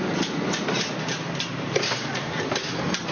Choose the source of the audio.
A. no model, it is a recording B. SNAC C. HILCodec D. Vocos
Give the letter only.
A